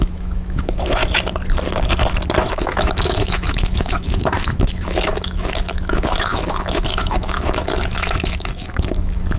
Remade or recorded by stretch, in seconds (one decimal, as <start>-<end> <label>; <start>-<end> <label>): 0.0-1.0 remade; 1.0-2.5 recorded; 2.5-9.4 remade